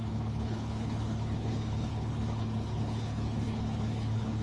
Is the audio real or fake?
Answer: fake